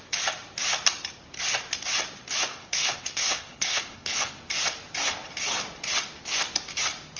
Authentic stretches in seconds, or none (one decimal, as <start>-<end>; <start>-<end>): 0.0-2.5; 4.4-7.2